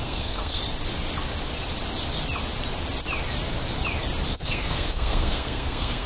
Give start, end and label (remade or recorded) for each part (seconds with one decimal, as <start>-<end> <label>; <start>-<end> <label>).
0.0-0.6 remade; 0.6-4.3 recorded; 4.3-6.1 remade